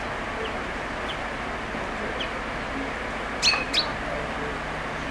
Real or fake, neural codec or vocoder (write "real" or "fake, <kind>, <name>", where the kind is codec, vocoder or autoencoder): real